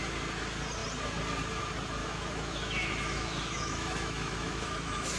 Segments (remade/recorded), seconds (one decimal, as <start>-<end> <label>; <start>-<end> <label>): 0.0-2.0 recorded; 2.0-5.2 remade